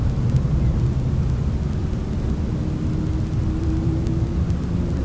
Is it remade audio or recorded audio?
recorded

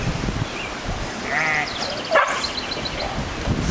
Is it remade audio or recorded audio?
recorded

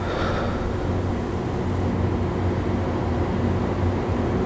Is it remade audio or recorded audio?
recorded